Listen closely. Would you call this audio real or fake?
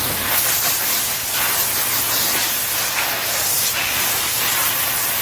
real